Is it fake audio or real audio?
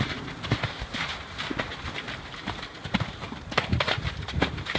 real